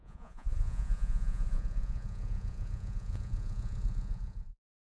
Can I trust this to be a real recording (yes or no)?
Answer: no